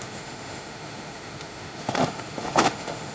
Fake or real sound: fake